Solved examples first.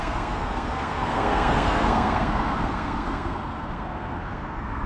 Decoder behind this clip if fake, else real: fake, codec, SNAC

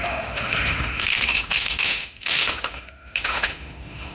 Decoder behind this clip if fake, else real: fake, autoencoder, DAC-VAE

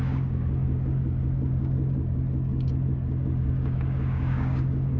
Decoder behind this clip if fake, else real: fake, codec, DAC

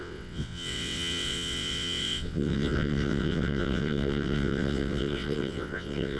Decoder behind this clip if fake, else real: fake, vocoder, WaveNeXt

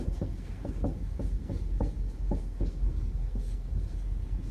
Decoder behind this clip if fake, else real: fake, codec, SNAC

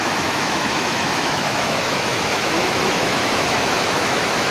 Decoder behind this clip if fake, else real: fake, autoencoder, DAC-VAE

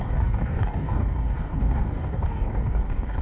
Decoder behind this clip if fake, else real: fake, codec, DAC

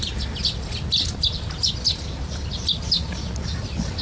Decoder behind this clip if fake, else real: real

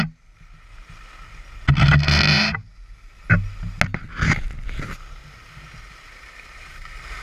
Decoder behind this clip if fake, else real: real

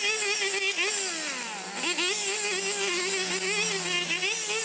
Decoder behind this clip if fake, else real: real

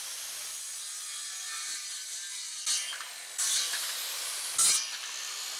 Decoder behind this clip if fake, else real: real